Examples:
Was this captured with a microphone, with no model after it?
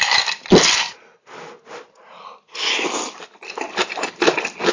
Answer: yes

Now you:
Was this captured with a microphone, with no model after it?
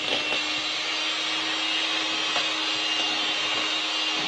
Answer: yes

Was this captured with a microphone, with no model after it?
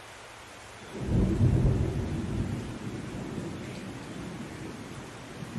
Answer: yes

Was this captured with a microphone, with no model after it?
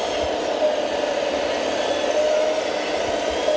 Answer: yes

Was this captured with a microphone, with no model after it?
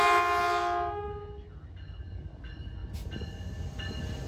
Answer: yes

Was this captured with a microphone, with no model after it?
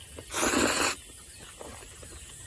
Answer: yes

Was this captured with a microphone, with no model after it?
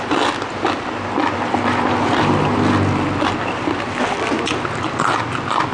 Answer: yes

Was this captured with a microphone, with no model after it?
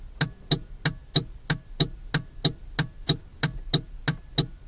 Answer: yes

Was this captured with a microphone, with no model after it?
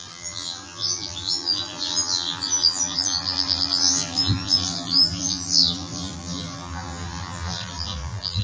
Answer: no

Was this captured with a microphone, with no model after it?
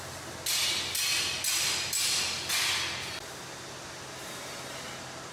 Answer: yes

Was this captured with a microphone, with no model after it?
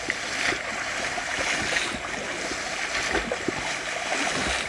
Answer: yes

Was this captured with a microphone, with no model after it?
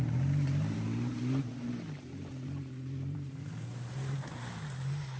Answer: no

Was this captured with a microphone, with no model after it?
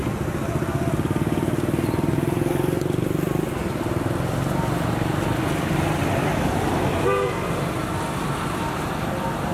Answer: yes